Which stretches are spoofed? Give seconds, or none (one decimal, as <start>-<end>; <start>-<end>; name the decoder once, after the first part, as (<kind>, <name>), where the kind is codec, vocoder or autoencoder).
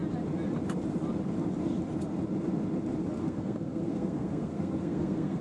3.2-5.4 (codec, SNAC)